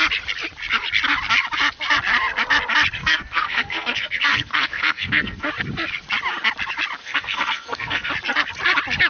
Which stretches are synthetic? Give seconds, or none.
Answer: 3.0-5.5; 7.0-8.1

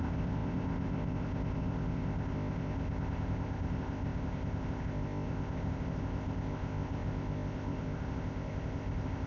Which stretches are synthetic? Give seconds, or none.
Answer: 0.0-9.3